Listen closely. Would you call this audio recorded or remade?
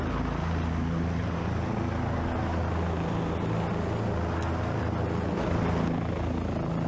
recorded